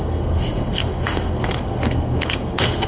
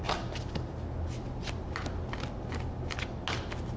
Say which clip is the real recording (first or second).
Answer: second